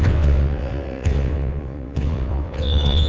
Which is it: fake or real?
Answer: fake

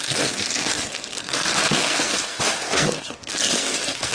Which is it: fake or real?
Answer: fake